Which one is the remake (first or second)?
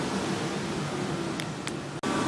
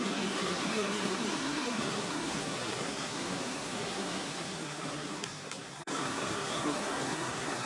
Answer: second